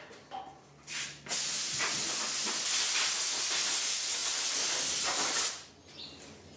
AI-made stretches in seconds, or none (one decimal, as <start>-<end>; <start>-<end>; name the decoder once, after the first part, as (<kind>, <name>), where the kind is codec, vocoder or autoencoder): none